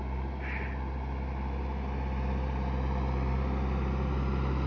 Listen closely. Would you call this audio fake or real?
real